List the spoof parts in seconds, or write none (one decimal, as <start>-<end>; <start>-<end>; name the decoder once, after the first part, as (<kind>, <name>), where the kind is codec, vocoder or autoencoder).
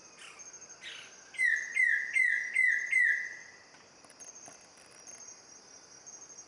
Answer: 1.7-5.6 (vocoder, BigVGAN v2)